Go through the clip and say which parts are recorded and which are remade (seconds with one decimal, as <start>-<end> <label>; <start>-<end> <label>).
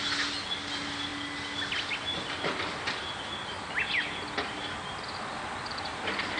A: 0.0-6.4 recorded